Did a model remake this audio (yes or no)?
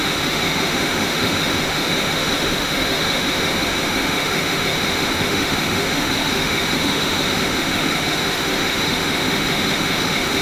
yes